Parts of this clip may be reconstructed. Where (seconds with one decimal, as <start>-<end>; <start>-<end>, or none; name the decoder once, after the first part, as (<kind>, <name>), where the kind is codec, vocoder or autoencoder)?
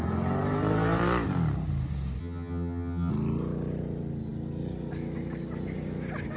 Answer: 2.2-3.1 (vocoder, HiFi-GAN)